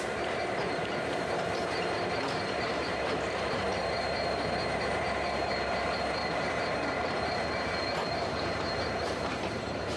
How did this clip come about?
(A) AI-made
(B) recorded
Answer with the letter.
A